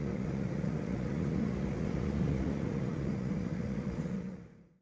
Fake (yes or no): yes